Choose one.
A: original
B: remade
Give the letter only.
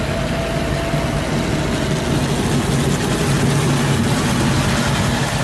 A